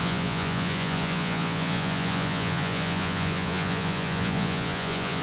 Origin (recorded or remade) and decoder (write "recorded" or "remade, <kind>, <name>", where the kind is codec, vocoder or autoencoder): remade, vocoder, Vocos